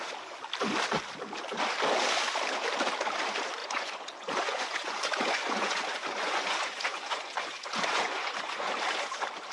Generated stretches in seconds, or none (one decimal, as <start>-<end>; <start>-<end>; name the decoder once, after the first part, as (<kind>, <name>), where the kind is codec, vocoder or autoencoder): 3.6-8.7 (vocoder, Vocos)